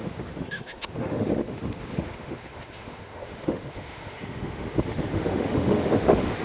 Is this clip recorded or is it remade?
remade